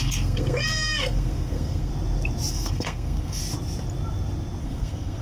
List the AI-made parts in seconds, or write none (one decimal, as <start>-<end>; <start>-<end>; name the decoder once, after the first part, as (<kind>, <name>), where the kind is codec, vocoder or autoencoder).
0.0-1.9 (codec, SNAC); 2.5-3.4; 4.6-5.2